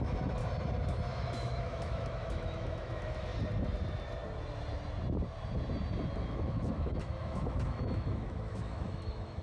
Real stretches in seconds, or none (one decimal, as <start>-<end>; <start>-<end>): 0.4-1.1; 3.3-6.2